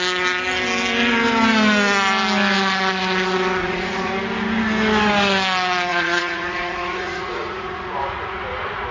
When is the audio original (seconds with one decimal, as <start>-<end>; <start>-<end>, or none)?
0.0-3.6; 4.1-5.9